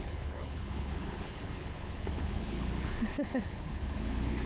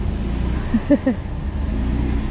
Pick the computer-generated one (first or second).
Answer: first